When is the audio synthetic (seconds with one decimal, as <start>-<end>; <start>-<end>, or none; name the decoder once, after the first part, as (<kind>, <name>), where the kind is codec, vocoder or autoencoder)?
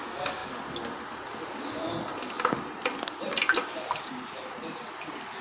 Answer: 2.1-5.4 (vocoder, BigVGAN v2)